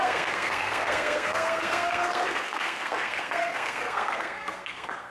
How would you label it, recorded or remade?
remade